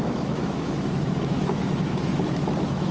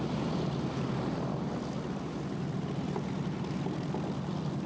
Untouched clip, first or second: second